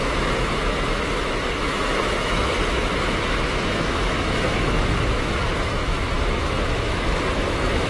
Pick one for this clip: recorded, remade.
remade